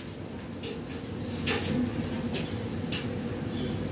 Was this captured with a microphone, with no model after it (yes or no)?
yes